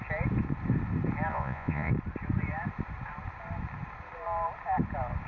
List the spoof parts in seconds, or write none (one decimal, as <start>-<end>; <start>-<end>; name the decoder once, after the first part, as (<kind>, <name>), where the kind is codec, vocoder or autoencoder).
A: 1.3-1.9 (vocoder, Vocos)